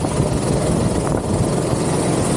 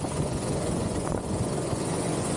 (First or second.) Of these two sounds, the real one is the first